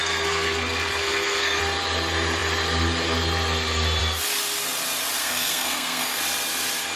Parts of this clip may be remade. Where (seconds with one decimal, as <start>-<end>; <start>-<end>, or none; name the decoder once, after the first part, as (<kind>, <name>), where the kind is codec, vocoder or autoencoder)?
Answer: 0.0-1.6 (codec, SNAC); 5.2-6.2